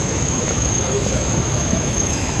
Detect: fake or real fake